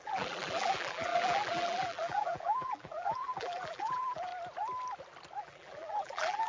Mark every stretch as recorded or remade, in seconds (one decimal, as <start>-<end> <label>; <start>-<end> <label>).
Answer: 0.0-4.3 remade; 4.3-5.4 recorded; 5.4-6.5 remade